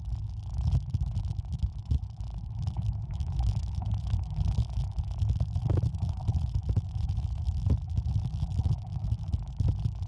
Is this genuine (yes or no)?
no